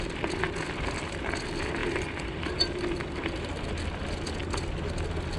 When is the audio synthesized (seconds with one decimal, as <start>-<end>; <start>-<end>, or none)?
none